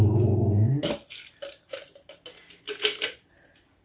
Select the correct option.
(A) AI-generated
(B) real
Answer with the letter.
B